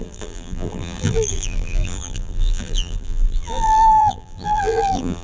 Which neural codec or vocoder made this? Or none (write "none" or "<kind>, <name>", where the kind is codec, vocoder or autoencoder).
vocoder, BigVGAN v2